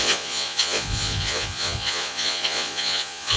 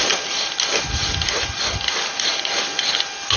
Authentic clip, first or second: second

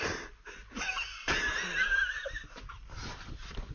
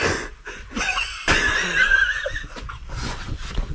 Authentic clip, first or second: first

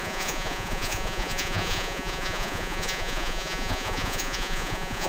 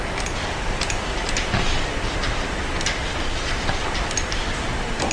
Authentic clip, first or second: second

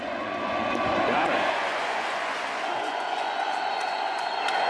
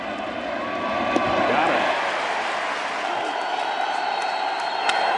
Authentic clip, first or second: second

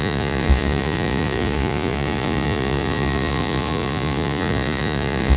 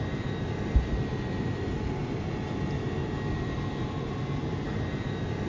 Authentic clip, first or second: second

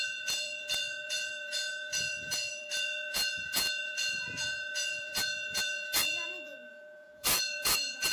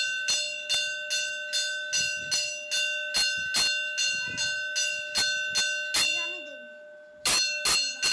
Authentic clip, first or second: second